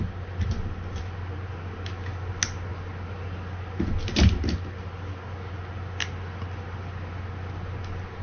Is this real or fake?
real